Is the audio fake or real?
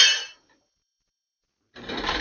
fake